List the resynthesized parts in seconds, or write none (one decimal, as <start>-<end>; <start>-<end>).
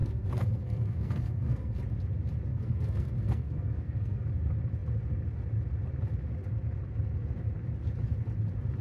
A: 0.0-1.8; 2.5-4.2